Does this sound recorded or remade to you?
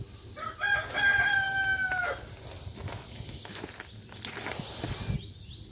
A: recorded